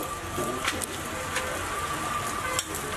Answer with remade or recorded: recorded